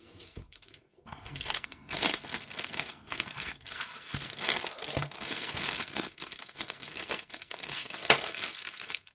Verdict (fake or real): fake